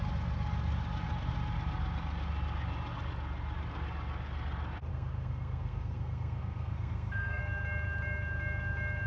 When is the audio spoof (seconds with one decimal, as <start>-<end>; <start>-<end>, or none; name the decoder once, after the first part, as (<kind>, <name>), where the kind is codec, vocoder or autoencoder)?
4.9-7.4 (codec, SNAC)